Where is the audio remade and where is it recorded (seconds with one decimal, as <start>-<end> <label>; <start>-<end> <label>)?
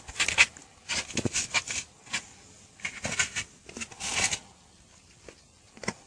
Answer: 0.0-6.1 recorded